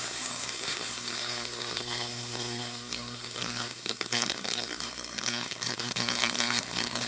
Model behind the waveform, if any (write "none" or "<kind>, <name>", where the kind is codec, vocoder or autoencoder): codec, SNAC